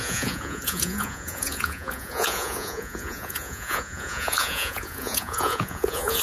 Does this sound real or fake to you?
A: fake